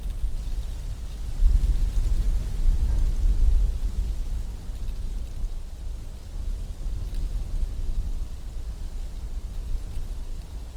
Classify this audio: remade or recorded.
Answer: recorded